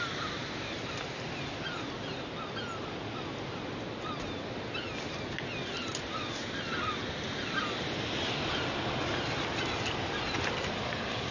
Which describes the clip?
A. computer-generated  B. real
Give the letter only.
B